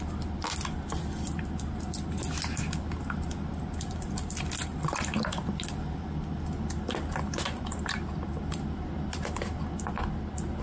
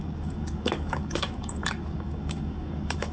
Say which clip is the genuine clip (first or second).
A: first